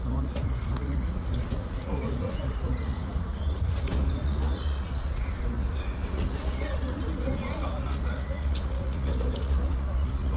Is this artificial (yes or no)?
yes